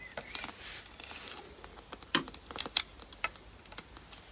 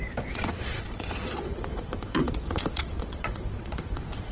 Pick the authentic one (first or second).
first